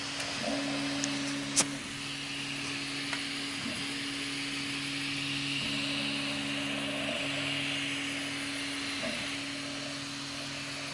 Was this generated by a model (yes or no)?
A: no